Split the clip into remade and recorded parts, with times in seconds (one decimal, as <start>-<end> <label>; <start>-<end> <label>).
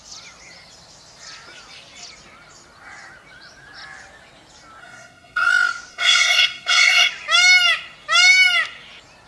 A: 0.0-4.8 recorded; 4.8-5.5 remade; 5.5-5.9 recorded; 5.9-7.1 remade; 7.1-9.3 recorded